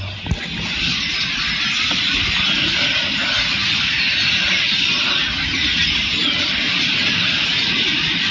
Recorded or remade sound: recorded